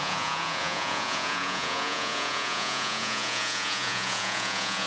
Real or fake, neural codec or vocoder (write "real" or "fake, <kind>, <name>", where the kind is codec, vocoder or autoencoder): fake, vocoder, Vocos